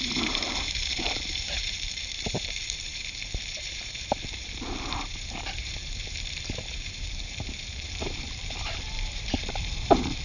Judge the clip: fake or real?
fake